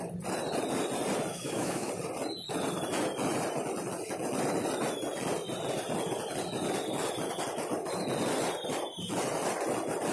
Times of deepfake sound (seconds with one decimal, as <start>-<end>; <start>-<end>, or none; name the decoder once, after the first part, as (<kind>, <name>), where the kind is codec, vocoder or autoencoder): 1.3-1.9 (autoencoder, DAC-VAE)